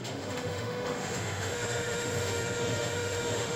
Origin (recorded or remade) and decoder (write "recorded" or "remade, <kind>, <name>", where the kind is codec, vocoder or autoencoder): remade, autoencoder, DAC-VAE